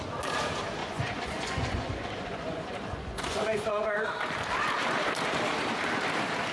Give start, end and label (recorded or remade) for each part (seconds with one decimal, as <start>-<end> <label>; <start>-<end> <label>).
0.0-0.8 recorded; 0.8-4.1 remade; 4.1-6.5 recorded